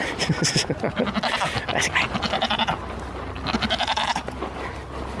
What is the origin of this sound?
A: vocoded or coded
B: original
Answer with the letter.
B